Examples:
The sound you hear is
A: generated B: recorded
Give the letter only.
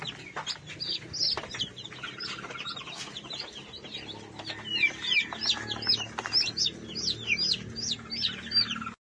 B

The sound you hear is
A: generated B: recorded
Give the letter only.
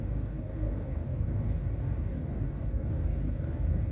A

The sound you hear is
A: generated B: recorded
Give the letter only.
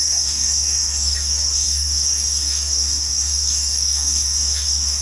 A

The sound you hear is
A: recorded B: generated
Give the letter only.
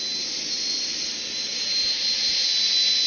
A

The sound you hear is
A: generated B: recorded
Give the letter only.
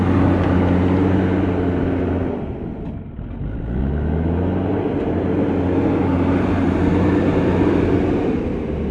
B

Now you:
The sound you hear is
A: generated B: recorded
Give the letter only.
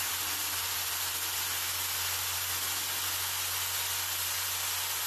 B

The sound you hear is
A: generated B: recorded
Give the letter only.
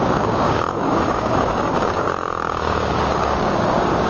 A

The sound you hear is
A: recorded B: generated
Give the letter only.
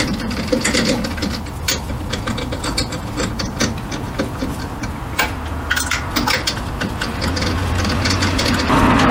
A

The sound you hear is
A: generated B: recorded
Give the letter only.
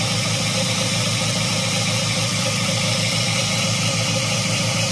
B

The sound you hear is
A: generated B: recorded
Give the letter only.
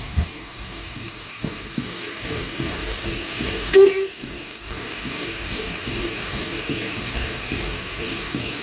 A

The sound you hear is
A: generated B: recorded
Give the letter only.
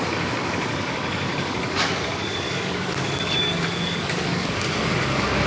A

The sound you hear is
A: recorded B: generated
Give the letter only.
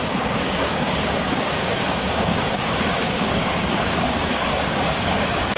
B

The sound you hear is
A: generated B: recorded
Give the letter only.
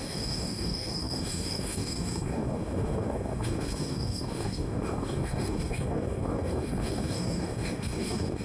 A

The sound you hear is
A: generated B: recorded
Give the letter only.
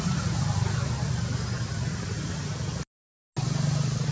B